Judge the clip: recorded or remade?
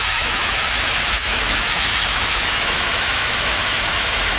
remade